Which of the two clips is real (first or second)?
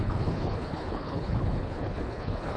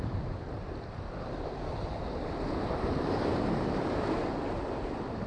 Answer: second